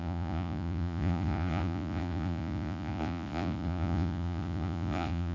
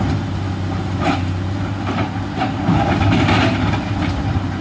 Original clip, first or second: second